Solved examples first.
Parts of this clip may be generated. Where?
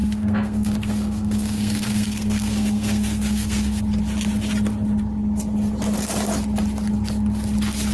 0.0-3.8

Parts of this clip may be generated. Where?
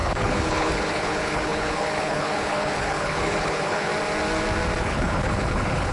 0.0-3.9; 4.8-5.9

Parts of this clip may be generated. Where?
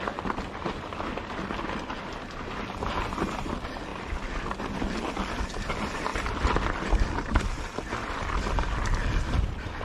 3.9-5.1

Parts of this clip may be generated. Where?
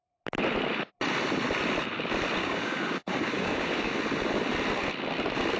2.4-3.9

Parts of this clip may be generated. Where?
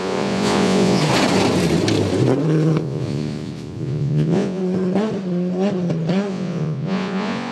0.0-1.0; 2.8-4.6; 6.3-7.5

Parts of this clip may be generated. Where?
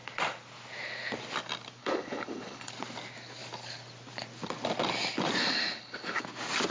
1.8-2.7; 5.4-6.2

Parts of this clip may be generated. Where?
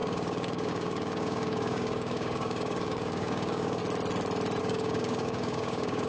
0.0-3.8; 4.6-6.1